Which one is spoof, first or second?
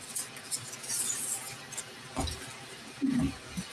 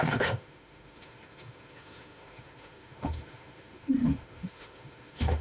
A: second